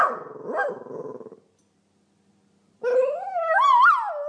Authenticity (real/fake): real